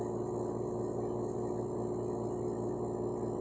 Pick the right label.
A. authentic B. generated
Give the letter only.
A